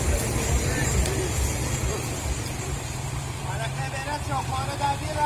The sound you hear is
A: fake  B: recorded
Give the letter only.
B